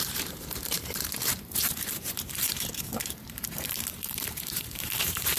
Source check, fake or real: fake